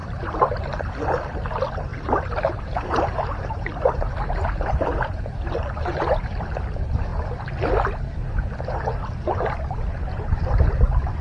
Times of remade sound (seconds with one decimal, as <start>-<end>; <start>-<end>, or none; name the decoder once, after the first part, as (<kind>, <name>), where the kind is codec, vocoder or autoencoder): 0.0-0.6 (vocoder, BigVGAN v2); 1.9-6.4